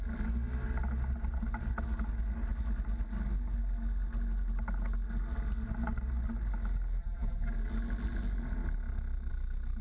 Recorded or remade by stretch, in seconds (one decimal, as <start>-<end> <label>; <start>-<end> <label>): 0.0-7.0 recorded; 7.0-7.5 remade; 7.5-9.8 recorded